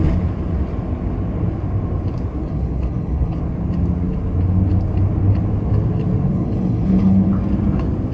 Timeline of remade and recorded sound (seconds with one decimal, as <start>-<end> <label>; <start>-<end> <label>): 0.0-2.4 recorded; 2.4-3.4 remade; 3.4-6.3 recorded; 6.3-7.3 remade; 7.3-8.1 recorded